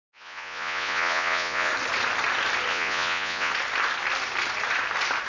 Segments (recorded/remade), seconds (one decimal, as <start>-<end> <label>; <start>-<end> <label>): 0.0-1.7 remade; 1.7-2.7 recorded; 2.7-3.5 remade; 3.5-5.3 recorded